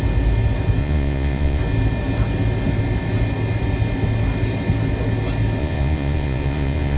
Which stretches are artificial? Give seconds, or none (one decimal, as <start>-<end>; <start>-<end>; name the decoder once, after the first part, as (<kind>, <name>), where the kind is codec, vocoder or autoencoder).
0.8-1.6 (vocoder, Vocos); 5.6-7.0